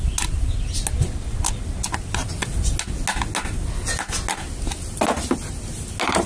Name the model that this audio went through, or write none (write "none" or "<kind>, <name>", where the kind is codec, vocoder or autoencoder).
none